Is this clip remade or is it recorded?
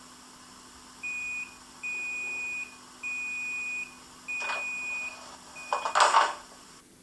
recorded